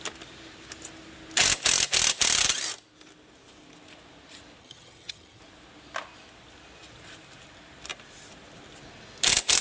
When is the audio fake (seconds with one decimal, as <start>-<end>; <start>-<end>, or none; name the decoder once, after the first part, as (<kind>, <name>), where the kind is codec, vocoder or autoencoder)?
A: 4.6-5.4 (vocoder, HiFi-GAN)